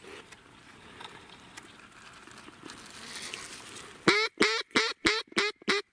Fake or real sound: real